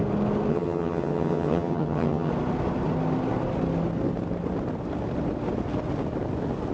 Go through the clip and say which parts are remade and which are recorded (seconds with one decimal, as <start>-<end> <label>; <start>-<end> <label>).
0.0-0.5 recorded; 0.5-2.3 remade; 2.3-6.7 recorded